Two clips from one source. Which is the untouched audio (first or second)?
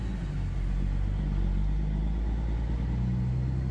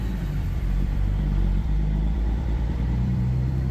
first